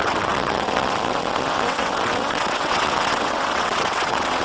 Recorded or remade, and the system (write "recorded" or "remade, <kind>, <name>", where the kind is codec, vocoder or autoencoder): remade, vocoder, WaveNeXt